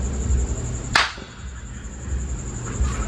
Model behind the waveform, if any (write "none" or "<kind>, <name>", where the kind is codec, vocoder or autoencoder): none